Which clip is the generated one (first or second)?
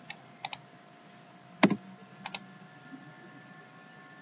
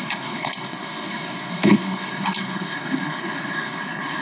second